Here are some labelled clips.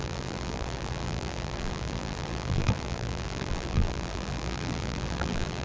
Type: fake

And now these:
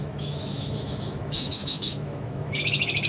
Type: fake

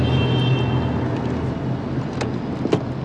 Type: real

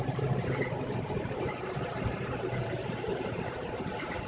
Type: fake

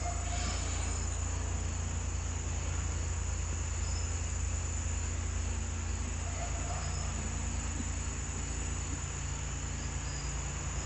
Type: real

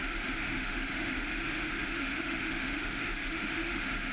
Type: fake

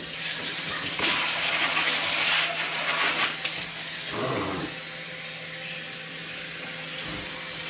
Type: real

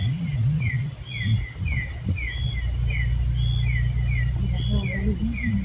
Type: real